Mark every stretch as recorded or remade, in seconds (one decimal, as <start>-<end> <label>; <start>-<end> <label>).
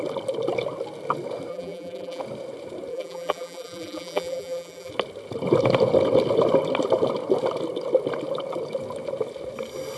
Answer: 0.0-1.5 recorded; 1.5-2.2 remade; 2.2-2.9 recorded; 2.9-4.9 remade; 4.9-10.0 recorded